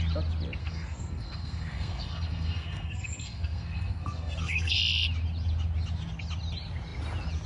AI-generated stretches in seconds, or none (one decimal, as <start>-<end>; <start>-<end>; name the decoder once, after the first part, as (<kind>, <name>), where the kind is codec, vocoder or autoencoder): 0.6-4.8 (codec, SNAC)